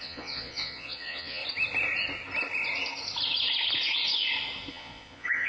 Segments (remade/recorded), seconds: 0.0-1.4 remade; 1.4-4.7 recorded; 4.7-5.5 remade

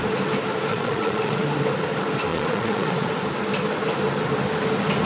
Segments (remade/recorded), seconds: 0.0-0.7 recorded; 0.7-1.4 remade; 1.4-2.3 recorded; 2.3-3.1 remade; 3.1-5.1 recorded